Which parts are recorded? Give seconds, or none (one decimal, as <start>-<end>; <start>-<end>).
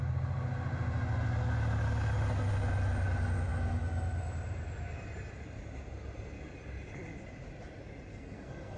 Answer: 0.0-8.1